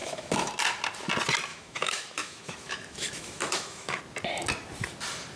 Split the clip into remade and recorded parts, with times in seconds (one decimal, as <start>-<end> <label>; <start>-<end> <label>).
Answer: 0.0-0.5 remade; 0.5-1.5 recorded; 1.5-4.0 remade; 4.0-5.4 recorded